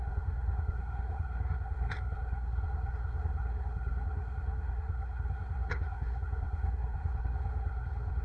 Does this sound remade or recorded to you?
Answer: remade